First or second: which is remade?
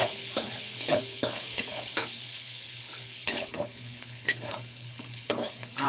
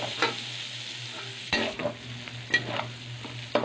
first